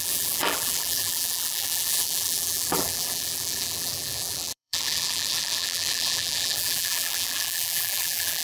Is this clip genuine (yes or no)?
no